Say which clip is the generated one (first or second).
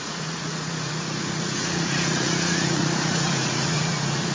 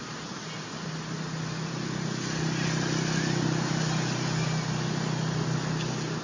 first